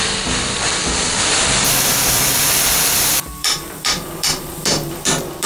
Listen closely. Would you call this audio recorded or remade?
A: remade